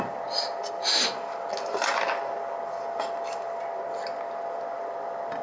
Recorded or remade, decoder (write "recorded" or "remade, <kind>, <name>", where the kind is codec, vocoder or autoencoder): recorded